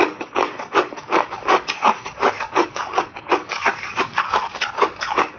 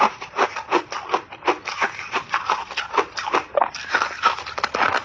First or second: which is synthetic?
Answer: first